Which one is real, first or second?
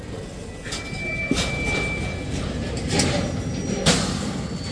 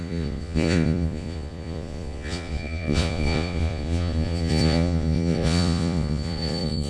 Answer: first